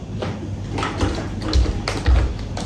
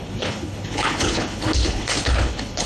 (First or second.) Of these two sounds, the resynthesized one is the second